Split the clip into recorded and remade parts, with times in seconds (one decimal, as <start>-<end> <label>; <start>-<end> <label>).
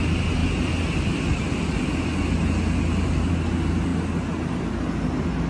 0.0-5.5 recorded